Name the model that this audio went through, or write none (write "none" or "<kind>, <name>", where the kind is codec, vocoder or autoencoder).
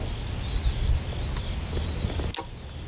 none